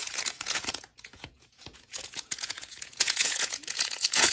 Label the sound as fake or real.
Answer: fake